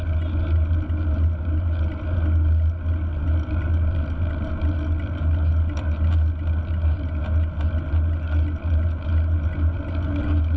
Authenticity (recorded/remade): recorded